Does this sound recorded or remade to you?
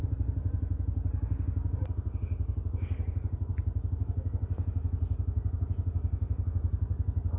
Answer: recorded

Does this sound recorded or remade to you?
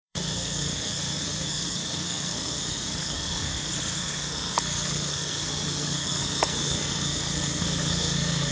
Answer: remade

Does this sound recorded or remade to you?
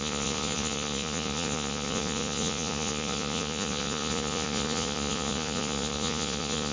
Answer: remade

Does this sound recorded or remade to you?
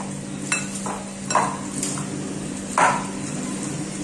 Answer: recorded